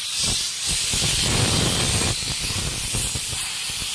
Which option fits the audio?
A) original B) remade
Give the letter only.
B